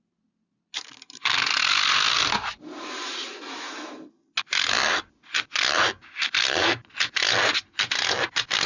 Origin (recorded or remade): recorded